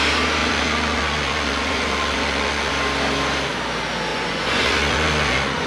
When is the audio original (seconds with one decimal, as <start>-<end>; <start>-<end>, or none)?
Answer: 0.0-0.4; 2.7-4.1